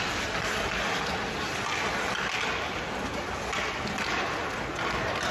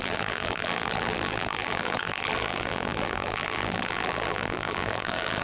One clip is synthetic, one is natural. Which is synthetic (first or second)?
second